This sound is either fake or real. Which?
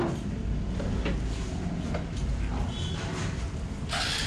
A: real